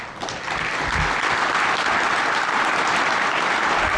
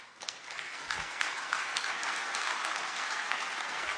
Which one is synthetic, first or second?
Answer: second